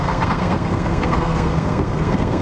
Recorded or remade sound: remade